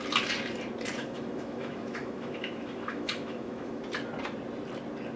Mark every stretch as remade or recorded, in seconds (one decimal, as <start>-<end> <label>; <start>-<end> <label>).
0.0-1.0 recorded; 1.0-3.8 remade; 3.8-5.2 recorded